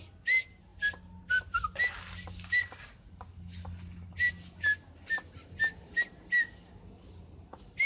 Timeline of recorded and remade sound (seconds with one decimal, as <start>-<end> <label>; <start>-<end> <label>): 0.0-7.9 recorded